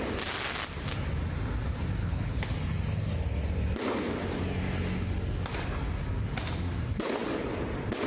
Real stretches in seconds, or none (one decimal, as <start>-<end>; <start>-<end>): 0.0-2.0; 2.5-8.1